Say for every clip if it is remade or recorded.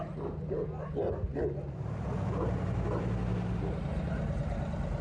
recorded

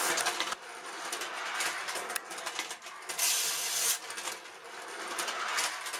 recorded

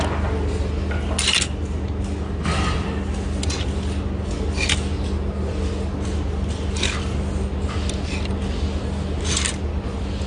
recorded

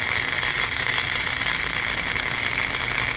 recorded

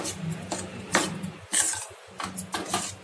recorded